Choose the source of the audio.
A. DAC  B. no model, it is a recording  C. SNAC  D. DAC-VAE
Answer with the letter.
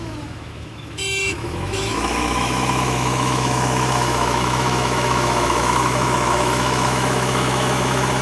D